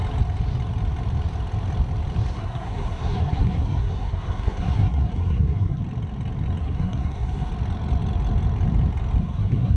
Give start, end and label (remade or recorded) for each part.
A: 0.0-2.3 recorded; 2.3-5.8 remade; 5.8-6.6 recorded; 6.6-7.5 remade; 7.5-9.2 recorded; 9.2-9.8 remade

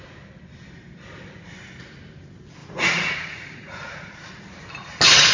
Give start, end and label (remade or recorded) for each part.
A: 0.0-2.6 recorded; 2.6-4.3 remade; 4.3-5.3 recorded

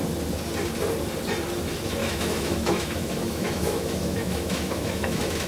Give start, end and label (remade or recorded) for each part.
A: 0.0-2.0 recorded; 2.0-5.5 remade

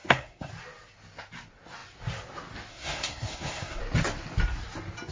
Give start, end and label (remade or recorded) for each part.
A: 0.0-0.5 remade; 0.5-2.7 recorded; 2.7-3.8 remade; 3.8-5.1 recorded